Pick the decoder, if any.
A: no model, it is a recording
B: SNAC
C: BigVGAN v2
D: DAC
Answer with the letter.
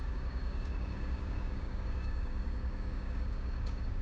D